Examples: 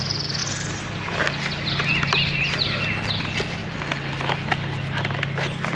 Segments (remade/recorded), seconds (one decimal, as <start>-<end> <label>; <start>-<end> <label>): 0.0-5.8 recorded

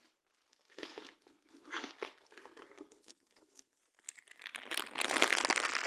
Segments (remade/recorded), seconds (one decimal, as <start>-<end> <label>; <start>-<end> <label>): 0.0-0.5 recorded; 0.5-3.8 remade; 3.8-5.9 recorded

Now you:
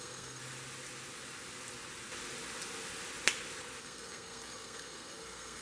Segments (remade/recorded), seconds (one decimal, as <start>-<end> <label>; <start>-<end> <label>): 0.0-0.4 remade; 0.4-3.8 recorded; 3.8-5.6 remade